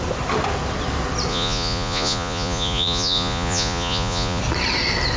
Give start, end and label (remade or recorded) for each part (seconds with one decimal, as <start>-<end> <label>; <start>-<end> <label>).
0.0-1.3 recorded; 1.3-4.4 remade; 4.4-5.2 recorded